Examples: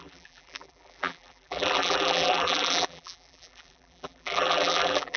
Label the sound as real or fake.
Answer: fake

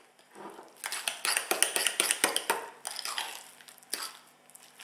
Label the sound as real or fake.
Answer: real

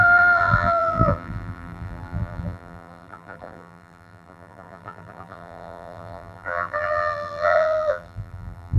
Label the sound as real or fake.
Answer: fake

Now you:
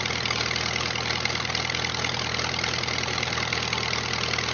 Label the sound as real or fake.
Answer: real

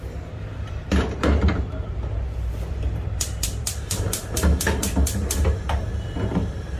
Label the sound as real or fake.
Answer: fake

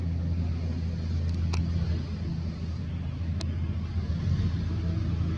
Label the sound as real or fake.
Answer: real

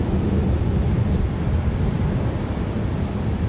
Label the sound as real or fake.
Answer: real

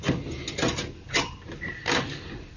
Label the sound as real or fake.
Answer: real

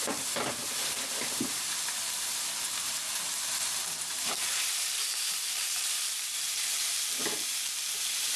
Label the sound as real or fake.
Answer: fake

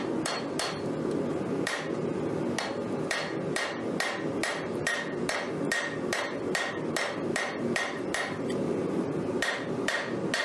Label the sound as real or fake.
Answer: real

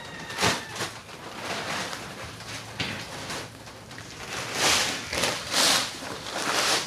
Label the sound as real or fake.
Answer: real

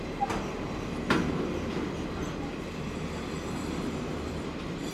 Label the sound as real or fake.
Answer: real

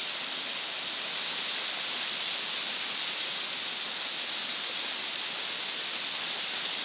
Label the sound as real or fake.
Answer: real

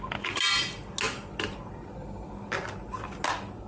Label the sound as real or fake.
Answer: real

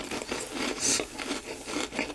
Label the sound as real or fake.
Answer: real